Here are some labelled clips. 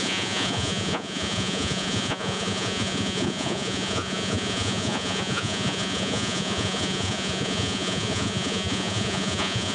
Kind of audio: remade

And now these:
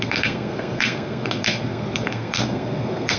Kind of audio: remade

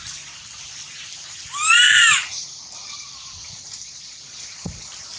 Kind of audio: remade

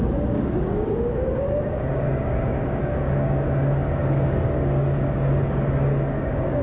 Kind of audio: remade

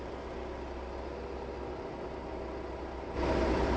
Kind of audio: recorded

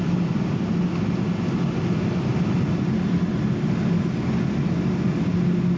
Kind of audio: recorded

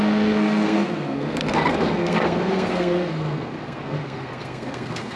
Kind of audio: remade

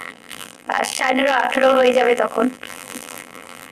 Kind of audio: remade